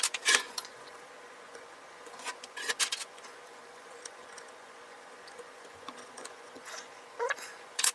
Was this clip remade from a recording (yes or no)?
yes